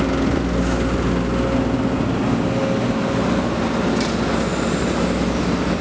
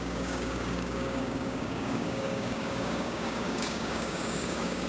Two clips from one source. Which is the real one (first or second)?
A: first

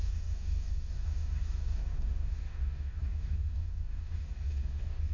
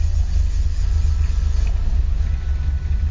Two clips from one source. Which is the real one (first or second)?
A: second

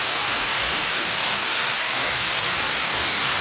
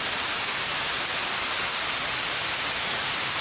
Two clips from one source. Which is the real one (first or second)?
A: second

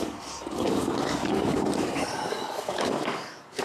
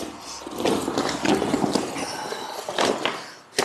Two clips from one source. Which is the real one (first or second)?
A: second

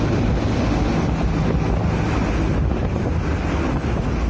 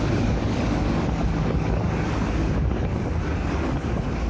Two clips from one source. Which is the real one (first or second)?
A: first